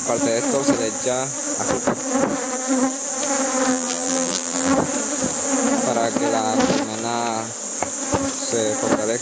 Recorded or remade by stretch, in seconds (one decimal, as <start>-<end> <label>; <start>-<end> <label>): 0.0-3.7 recorded; 3.7-4.7 remade; 4.7-9.2 recorded